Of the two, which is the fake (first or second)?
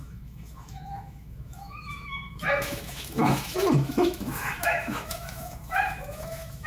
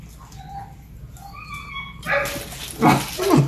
first